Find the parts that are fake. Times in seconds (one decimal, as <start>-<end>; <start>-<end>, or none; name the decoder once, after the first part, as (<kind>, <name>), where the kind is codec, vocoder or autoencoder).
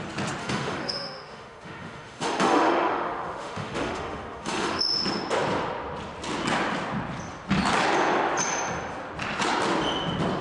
0.4-4.8 (autoencoder, DAC-VAE)